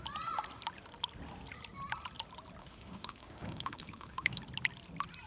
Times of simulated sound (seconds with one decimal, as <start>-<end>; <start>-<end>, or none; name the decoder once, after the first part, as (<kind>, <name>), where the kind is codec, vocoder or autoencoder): 2.6-4.4 (autoencoder, DAC-VAE)